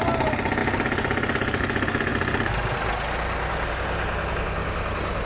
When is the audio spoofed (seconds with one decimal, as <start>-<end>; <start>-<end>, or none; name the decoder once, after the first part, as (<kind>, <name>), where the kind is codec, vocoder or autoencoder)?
none